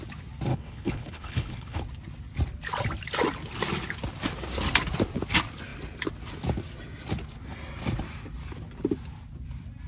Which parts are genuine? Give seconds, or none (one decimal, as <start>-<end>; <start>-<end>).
0.0-0.5; 1.8-9.9